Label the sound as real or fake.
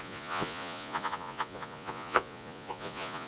fake